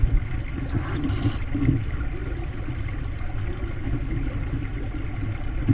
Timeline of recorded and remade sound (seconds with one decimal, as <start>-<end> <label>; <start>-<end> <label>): 0.0-5.7 recorded